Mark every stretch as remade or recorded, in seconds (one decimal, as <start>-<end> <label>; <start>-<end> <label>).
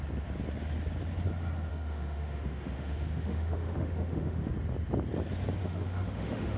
0.0-1.7 recorded; 1.7-4.5 remade; 4.5-5.6 recorded; 5.6-6.6 remade